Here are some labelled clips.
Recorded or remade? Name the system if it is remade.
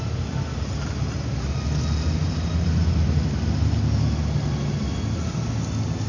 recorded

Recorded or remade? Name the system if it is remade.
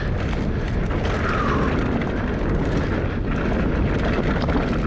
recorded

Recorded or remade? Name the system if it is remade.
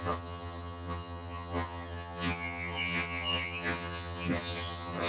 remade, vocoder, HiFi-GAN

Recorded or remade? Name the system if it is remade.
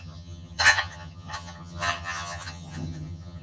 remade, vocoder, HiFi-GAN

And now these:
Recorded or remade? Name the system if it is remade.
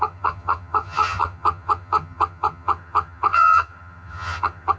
remade, vocoder, HiFi-GAN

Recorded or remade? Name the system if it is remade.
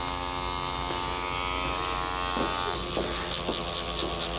recorded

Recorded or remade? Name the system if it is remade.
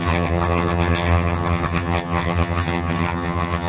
remade, vocoder, HiFi-GAN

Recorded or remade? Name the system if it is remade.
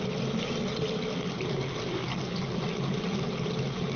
recorded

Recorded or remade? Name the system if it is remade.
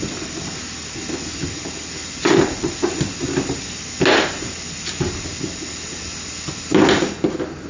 recorded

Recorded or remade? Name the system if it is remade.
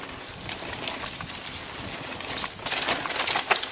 recorded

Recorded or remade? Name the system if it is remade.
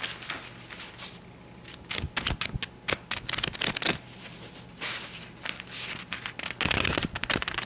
recorded